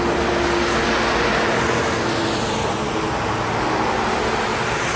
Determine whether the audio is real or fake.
real